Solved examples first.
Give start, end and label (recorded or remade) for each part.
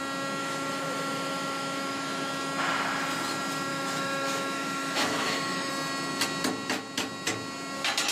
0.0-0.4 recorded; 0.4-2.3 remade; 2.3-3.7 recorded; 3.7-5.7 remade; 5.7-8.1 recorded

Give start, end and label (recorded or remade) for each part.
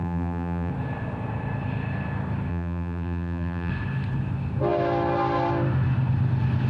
0.0-0.7 remade; 0.7-2.5 recorded; 2.5-3.7 remade; 3.7-6.7 recorded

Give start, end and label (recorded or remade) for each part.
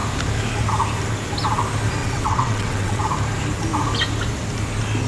0.0-2.0 recorded; 2.0-3.0 remade; 3.0-5.1 recorded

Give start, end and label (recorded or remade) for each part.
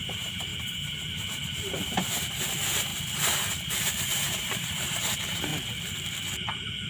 0.0-0.5 remade; 0.5-2.4 recorded; 2.4-2.9 remade; 2.9-3.7 recorded; 3.7-5.5 remade; 5.5-6.9 recorded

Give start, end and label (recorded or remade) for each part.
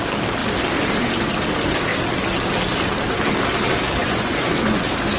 0.0-4.0 recorded; 4.0-4.8 remade; 4.8-5.2 recorded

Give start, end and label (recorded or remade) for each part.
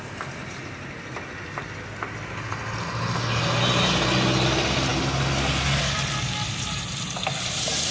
0.0-7.9 recorded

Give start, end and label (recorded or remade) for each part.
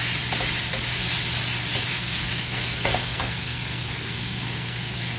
0.0-1.9 recorded; 1.9-5.2 remade